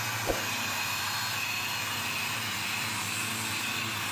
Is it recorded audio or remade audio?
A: recorded